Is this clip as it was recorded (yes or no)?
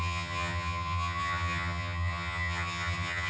no